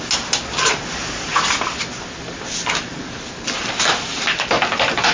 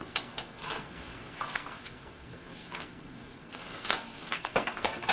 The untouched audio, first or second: first